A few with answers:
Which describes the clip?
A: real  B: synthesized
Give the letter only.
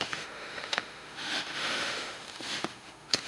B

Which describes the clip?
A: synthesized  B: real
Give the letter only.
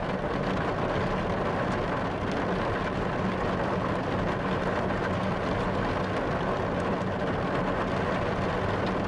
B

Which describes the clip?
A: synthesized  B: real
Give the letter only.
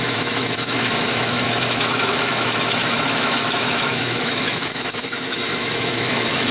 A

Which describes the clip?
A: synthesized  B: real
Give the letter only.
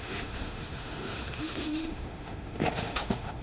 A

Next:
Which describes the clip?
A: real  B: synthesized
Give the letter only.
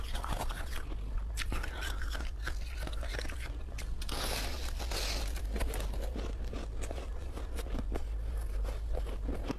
A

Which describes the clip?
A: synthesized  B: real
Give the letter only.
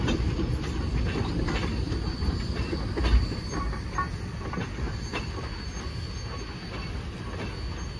B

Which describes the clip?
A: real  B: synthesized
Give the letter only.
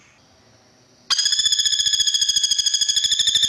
A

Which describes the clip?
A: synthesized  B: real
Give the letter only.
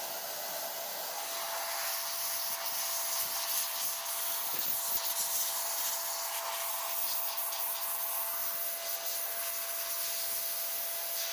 B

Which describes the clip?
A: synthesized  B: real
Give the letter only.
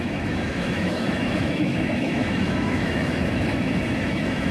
A